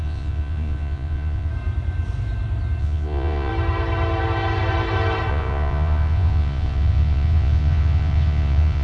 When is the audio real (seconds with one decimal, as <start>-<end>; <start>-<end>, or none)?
1.5-2.8; 3.5-5.3